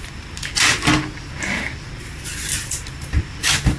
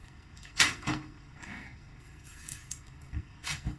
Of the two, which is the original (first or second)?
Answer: first